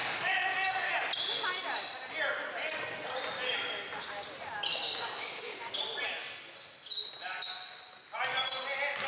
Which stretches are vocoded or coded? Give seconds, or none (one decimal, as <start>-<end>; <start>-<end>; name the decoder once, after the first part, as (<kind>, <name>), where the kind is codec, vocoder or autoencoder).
0.0-0.9 (codec, DAC); 4.7-5.7